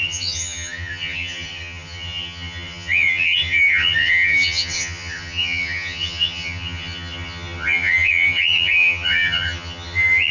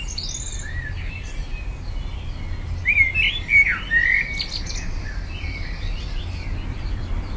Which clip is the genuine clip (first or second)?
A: second